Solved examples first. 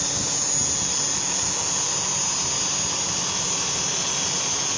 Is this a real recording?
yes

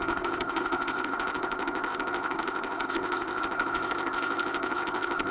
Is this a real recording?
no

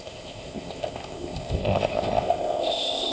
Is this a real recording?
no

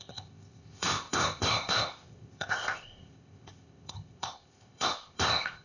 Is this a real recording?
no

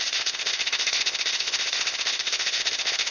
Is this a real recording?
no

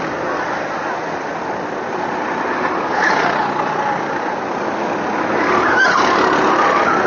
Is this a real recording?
yes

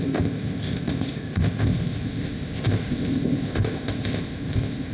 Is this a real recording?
no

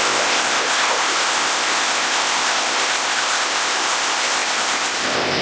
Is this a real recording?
no